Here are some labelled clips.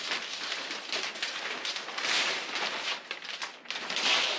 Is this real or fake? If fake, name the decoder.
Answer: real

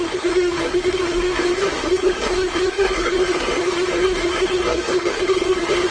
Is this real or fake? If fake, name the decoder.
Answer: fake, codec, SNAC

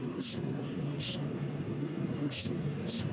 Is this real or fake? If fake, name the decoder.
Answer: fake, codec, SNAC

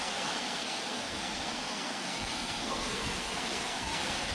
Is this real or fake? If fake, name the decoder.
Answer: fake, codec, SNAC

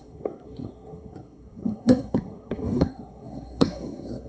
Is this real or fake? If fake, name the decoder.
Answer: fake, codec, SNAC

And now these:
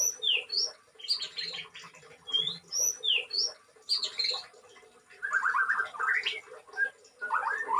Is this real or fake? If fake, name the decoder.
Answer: real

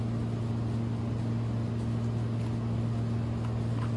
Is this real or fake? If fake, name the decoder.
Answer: real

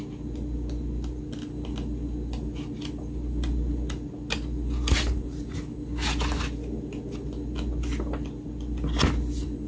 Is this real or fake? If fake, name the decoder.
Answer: real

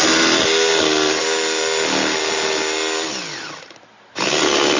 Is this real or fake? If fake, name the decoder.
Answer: real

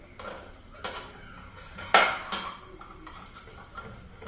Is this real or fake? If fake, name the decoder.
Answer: real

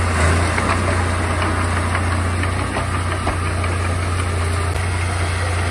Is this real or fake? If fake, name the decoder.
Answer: real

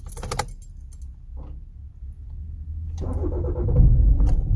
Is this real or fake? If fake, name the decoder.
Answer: real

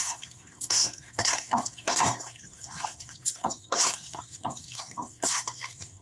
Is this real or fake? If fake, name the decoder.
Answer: fake, codec, SNAC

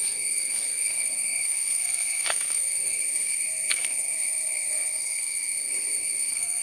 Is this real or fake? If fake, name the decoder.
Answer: fake, codec, SNAC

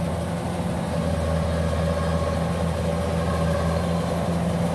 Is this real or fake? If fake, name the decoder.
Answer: real